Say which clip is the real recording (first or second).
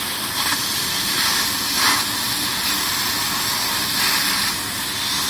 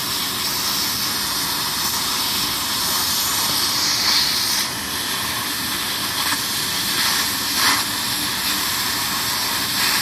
second